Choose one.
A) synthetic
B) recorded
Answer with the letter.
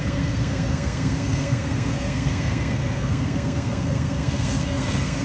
A